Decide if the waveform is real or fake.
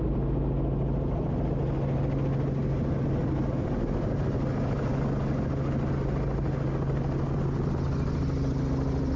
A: real